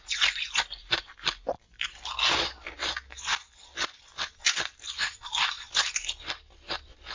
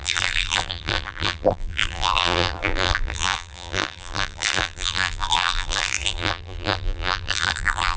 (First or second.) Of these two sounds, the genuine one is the first